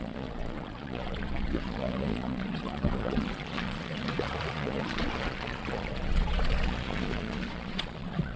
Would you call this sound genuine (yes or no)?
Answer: no